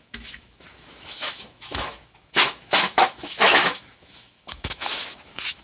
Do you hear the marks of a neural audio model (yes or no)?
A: yes